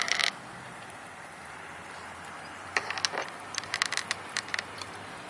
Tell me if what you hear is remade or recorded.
remade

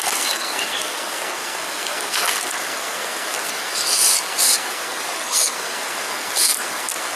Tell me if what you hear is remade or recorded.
remade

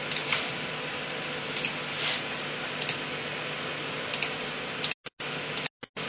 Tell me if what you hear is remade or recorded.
recorded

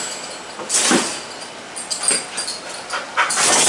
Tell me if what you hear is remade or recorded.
recorded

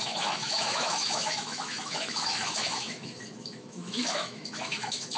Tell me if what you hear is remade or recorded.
remade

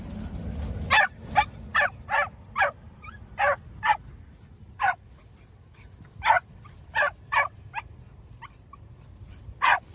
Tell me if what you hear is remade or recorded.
recorded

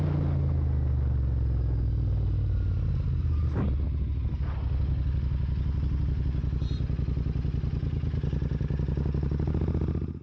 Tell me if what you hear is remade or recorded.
recorded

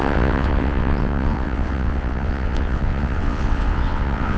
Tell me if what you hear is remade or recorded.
remade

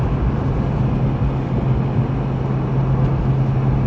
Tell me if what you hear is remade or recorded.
recorded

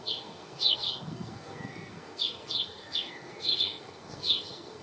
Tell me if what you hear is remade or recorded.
remade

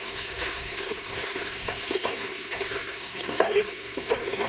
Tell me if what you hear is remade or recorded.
remade